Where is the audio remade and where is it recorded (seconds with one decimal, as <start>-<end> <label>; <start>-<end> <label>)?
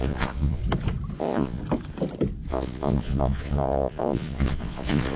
0.0-0.6 remade; 0.6-1.2 recorded; 1.2-1.6 remade; 1.6-2.5 recorded; 2.5-5.2 remade